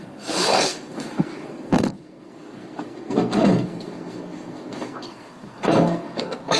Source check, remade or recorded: remade